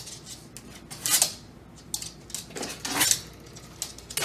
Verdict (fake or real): real